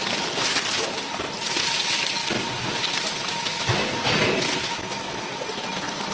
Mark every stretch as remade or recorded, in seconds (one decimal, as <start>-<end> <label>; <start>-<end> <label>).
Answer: 0.0-3.2 recorded; 3.2-3.7 remade; 3.7-4.7 recorded; 4.7-5.4 remade; 5.4-6.1 recorded

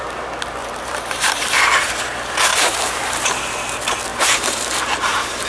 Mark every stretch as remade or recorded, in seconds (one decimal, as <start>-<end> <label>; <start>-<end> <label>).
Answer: 0.0-0.6 recorded; 0.6-1.9 remade; 1.9-2.5 recorded; 2.5-3.4 remade; 3.4-4.1 recorded; 4.1-5.5 remade

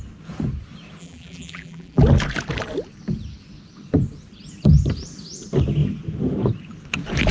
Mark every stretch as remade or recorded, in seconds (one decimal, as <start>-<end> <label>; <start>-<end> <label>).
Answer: 0.0-1.0 recorded; 1.0-2.0 remade; 2.0-7.3 recorded

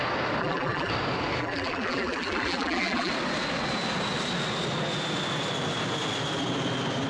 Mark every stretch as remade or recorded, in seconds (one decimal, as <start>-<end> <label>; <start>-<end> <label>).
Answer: 0.0-0.4 recorded; 0.4-0.9 remade; 0.9-1.4 recorded; 1.4-3.1 remade; 3.1-7.1 recorded

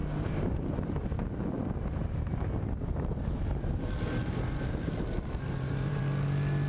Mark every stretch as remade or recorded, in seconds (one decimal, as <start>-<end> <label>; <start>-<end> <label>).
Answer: 0.0-1.0 remade; 1.0-2.0 recorded; 2.0-6.0 remade; 6.0-6.7 recorded

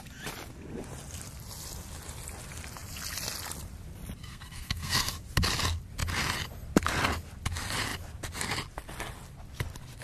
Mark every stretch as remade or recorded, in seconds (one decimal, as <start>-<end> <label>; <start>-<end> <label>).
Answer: 0.0-4.3 recorded; 4.3-5.1 remade; 5.1-10.0 recorded

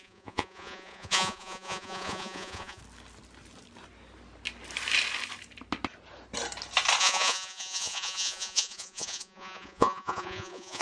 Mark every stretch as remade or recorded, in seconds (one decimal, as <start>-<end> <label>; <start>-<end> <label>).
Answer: 0.0-2.8 remade; 2.8-7.0 recorded; 7.0-10.8 remade

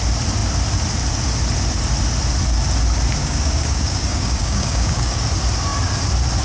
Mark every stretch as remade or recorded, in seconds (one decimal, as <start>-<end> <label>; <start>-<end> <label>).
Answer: 0.0-3.2 recorded; 3.2-5.2 remade; 5.2-6.4 recorded